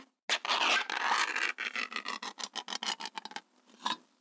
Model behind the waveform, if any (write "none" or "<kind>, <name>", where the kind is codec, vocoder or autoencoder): none